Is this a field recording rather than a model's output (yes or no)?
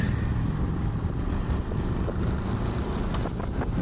yes